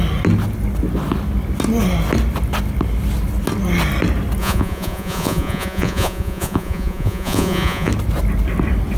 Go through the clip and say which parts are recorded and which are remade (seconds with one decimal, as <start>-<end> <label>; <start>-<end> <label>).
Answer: 0.0-4.4 recorded; 4.4-7.9 remade; 7.9-9.0 recorded